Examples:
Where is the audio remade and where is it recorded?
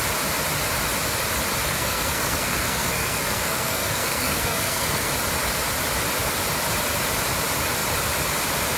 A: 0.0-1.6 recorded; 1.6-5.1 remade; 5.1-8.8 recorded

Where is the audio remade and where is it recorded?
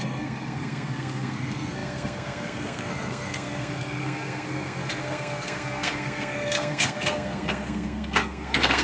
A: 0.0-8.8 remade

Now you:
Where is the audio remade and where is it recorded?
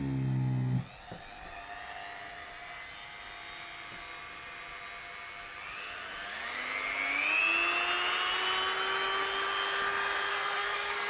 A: 0.0-10.3 recorded; 10.3-11.1 remade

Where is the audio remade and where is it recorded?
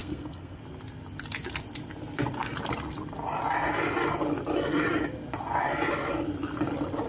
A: 0.0-0.6 remade; 0.6-7.1 recorded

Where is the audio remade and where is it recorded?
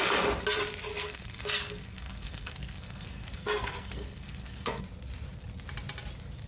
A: 0.0-0.9 recorded; 0.9-4.8 remade; 4.8-6.5 recorded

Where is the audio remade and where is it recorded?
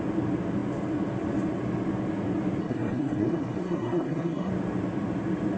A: 0.0-2.6 recorded; 2.6-4.5 remade; 4.5-5.6 recorded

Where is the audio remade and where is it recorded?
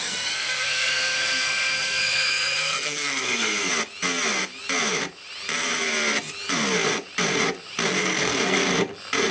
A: 0.0-3.7 remade; 3.7-8.0 recorded; 8.0-8.6 remade; 8.6-9.3 recorded